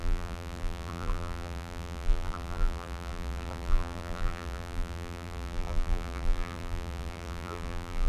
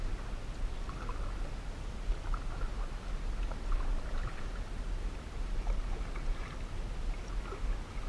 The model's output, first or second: first